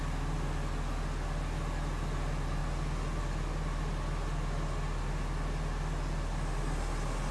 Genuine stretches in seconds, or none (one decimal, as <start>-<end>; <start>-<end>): 0.0-7.3